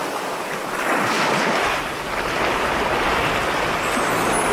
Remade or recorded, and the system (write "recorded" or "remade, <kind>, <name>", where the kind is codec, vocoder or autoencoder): recorded